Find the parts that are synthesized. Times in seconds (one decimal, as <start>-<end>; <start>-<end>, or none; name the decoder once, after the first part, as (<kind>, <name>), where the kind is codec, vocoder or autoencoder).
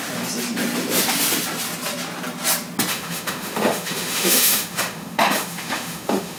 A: 2.9-6.4 (autoencoder, DAC-VAE)